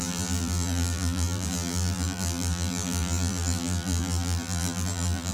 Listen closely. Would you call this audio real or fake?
fake